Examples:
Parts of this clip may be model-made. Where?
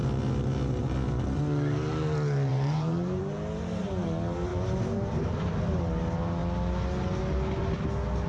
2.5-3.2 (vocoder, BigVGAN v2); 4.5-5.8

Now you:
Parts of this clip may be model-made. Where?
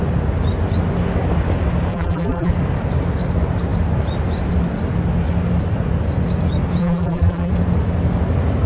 1.9-2.5 (vocoder, BigVGAN v2); 6.8-7.5